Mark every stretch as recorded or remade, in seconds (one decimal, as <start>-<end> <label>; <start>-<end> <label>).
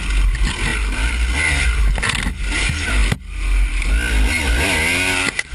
0.0-5.5 recorded